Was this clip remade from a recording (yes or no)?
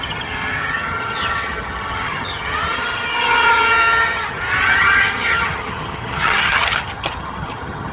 yes